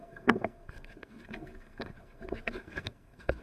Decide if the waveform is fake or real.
fake